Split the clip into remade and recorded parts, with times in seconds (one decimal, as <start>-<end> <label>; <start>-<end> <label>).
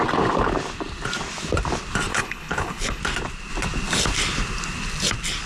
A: 0.0-2.1 recorded; 2.1-3.0 remade; 3.0-5.5 recorded